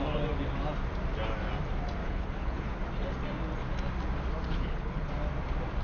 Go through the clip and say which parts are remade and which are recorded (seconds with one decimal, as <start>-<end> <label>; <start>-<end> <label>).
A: 0.0-2.0 recorded; 2.0-2.8 remade; 2.8-4.5 recorded; 4.5-5.1 remade; 5.1-5.8 recorded